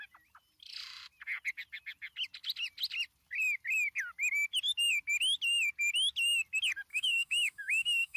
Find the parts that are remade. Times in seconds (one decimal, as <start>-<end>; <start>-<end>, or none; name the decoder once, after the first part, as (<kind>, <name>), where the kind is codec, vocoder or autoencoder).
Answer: 6.9-8.2 (autoencoder, DAC-VAE)